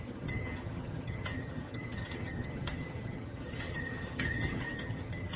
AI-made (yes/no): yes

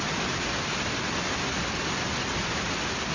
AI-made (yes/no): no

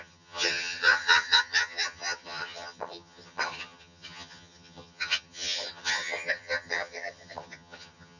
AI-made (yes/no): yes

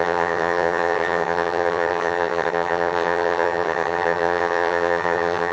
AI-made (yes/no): yes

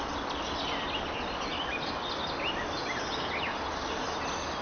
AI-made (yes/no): no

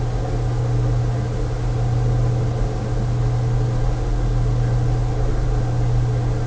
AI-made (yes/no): no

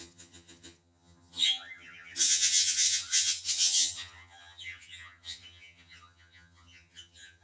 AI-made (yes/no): yes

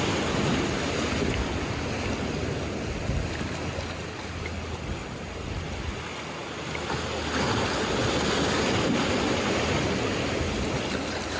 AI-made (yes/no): no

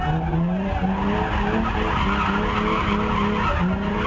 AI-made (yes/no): no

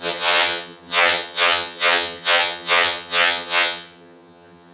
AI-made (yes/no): yes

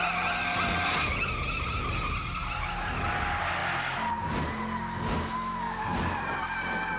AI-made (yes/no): no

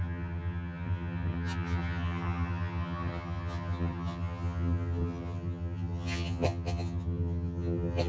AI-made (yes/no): yes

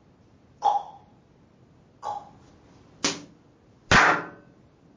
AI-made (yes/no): no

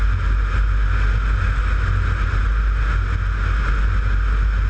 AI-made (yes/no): no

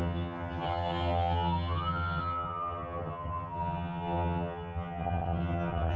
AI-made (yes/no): yes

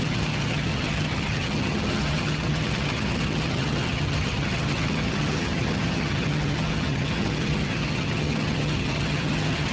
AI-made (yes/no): yes